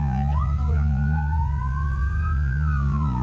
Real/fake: fake